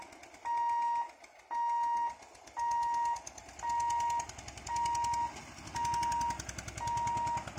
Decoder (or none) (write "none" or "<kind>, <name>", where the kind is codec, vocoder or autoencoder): none